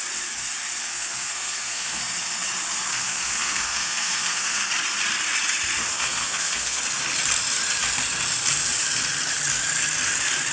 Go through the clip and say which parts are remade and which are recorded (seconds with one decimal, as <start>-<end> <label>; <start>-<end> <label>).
0.0-0.8 recorded; 0.8-2.0 remade; 2.0-2.9 recorded; 2.9-4.7 remade; 4.7-5.9 recorded; 5.9-6.8 remade; 6.8-10.5 recorded